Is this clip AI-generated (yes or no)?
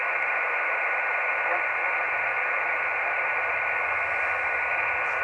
no